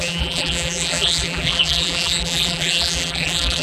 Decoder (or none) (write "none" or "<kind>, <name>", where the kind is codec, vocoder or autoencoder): vocoder, BigVGAN v2